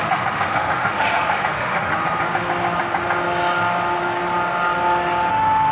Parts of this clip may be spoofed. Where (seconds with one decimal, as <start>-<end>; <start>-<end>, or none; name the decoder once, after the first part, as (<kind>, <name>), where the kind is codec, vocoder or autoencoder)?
0.0-1.9 (autoencoder, DAC-VAE); 5.3-5.7

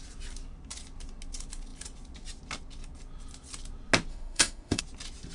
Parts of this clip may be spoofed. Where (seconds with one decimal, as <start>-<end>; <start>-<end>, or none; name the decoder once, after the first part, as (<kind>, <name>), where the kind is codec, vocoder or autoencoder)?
4.1-4.8 (autoencoder, DAC-VAE)

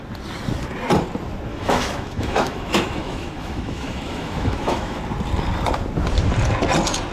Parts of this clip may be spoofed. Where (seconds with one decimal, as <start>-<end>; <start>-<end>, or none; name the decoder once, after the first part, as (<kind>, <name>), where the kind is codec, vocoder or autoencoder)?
1.5-5.0 (autoencoder, DAC-VAE)

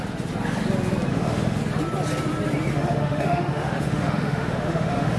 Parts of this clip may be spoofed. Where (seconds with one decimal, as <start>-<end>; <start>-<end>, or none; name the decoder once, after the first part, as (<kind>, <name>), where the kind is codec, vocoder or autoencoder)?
1.1-1.6 (autoencoder, DAC-VAE); 2.7-5.2

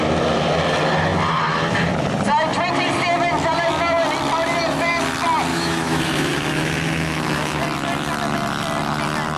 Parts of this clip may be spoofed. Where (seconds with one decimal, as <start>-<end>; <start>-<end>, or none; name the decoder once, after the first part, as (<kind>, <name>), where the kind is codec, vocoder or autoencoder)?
5.5-7.6 (autoencoder, DAC-VAE)

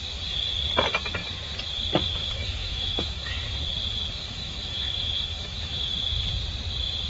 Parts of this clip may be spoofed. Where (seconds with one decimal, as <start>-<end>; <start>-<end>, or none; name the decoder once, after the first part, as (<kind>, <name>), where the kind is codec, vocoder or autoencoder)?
2.2-3.3 (autoencoder, DAC-VAE); 4.2-5.9